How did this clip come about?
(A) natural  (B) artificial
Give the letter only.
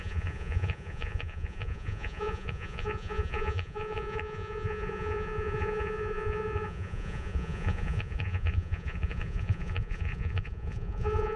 B